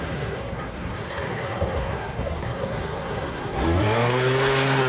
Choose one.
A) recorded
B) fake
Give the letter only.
B